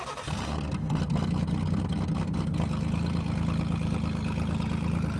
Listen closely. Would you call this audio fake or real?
real